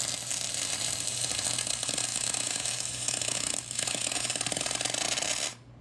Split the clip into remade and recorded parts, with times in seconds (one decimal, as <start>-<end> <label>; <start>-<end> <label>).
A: 0.0-2.1 recorded; 2.1-4.3 remade; 4.3-5.8 recorded